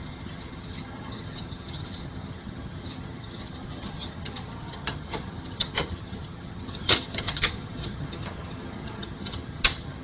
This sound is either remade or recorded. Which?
remade